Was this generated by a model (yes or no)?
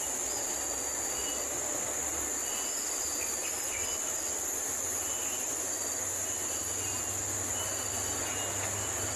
no